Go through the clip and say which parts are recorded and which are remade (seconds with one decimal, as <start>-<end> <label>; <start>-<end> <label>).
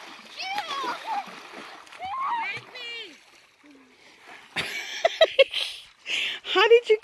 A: 0.0-7.0 recorded